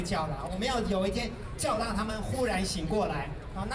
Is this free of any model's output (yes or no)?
no